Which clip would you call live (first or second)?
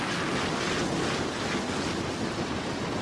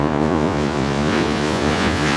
first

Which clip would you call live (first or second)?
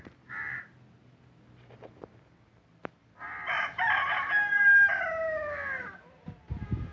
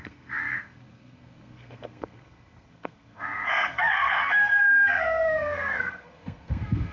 first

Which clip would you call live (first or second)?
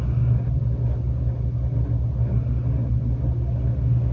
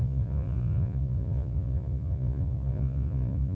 first